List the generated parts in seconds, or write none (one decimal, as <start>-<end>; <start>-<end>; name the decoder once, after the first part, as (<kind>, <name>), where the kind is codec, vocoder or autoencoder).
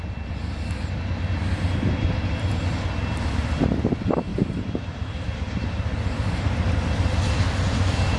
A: 4.3-5.6 (vocoder, BigVGAN v2)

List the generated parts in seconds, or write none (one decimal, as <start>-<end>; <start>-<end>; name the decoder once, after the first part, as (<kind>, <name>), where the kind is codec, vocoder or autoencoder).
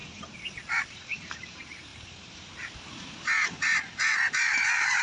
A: 0.0-5.0 (vocoder, BigVGAN v2)